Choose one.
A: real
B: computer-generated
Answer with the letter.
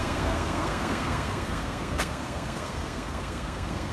B